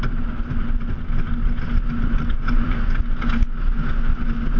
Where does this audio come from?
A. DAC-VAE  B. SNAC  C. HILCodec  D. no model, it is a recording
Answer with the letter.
D